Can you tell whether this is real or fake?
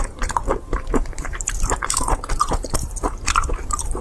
fake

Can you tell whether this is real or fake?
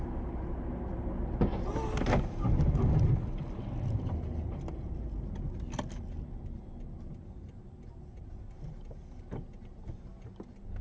real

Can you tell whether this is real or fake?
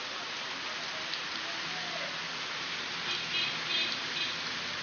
real